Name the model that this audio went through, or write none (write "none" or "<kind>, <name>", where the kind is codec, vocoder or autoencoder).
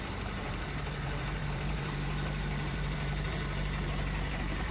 vocoder, BigVGAN v2